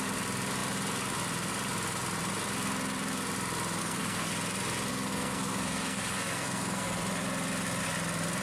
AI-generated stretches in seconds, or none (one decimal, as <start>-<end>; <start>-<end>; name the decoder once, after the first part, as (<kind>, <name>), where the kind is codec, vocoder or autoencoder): 3.8-4.3 (codec, SNAC); 4.9-7.0